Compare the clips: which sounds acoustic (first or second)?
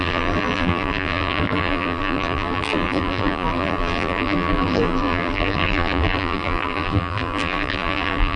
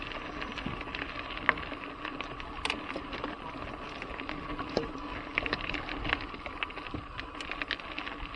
second